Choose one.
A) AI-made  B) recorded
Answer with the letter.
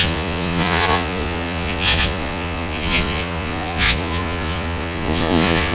A